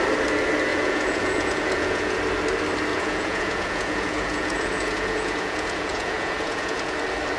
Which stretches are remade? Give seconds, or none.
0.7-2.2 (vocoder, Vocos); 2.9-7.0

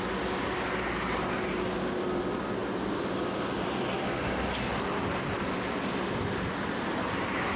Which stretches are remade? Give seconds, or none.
none

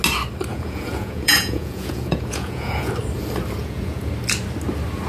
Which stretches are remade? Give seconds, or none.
0.5-2.9 (vocoder, Vocos); 3.6-4.1